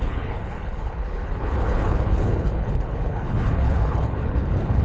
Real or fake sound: fake